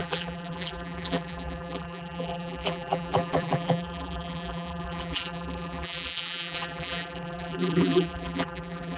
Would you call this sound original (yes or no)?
no